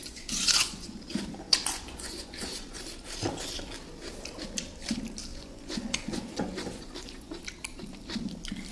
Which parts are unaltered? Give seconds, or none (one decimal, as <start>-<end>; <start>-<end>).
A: 2.8-5.3; 7.4-8.7